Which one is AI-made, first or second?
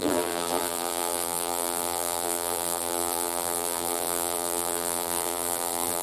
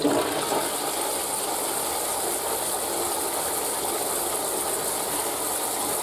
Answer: first